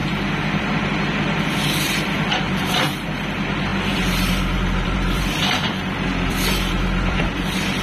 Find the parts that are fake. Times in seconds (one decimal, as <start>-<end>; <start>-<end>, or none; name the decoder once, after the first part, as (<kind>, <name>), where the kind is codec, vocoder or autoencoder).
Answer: 0.0-7.8 (vocoder, BigVGAN v2)